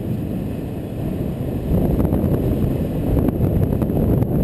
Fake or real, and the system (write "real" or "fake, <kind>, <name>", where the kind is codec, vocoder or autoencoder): real